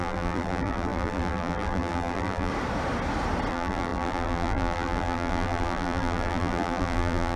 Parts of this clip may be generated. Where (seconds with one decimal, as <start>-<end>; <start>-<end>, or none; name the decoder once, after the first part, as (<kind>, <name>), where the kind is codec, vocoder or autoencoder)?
0.0-2.5 (vocoder, BigVGAN v2); 3.5-7.4

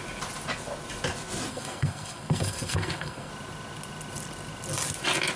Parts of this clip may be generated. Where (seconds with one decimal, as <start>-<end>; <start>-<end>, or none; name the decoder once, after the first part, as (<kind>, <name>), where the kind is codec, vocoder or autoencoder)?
1.5-3.3 (codec, SNAC)

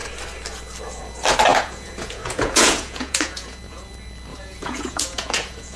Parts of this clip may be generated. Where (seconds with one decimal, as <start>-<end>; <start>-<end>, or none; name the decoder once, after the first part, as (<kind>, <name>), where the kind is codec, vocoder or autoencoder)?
1.5-3.9 (vocoder, Vocos); 4.3-5.8

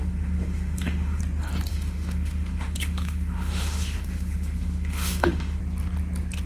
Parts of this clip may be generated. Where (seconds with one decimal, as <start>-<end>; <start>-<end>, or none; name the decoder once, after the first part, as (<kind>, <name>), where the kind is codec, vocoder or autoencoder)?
0.0-1.2 (autoencoder, DAC-VAE); 1.7-5.6

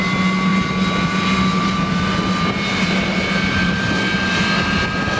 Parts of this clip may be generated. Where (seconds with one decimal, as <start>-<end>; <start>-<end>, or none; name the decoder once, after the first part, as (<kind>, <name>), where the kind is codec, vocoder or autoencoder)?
none

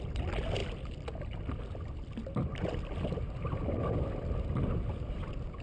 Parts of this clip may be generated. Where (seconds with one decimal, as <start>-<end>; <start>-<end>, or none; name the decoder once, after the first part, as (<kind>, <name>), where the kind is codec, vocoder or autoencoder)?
none

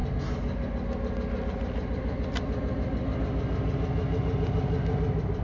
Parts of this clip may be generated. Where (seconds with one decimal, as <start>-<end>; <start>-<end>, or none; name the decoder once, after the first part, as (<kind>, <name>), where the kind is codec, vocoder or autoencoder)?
none

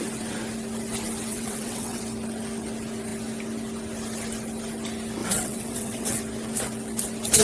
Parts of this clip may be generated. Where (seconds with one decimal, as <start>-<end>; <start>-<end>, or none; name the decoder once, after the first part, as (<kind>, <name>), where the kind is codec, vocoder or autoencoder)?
1.3-2.0 (vocoder, WaveNeXt); 5.2-6.2